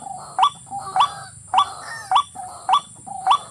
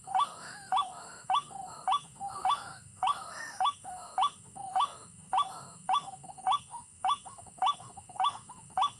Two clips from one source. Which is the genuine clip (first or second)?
first